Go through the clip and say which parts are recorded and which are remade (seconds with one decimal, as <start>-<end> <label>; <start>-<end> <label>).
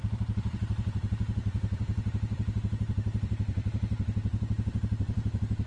0.0-5.7 remade